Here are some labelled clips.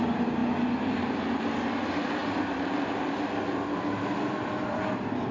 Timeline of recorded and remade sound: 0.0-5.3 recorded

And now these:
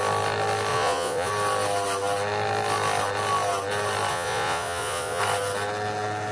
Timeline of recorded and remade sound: 0.0-0.7 recorded; 0.7-1.3 remade; 1.3-4.1 recorded; 4.1-5.2 remade; 5.2-6.3 recorded

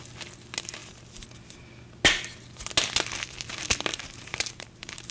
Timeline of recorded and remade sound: 0.0-3.9 recorded; 3.9-5.1 remade

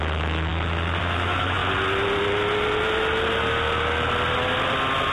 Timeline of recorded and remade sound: 0.0-1.6 remade; 1.6-5.1 recorded

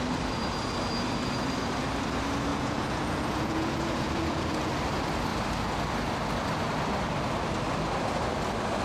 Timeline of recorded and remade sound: 0.0-2.5 recorded; 2.5-4.7 remade; 4.7-8.8 recorded